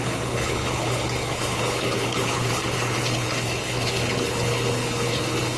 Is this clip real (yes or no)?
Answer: no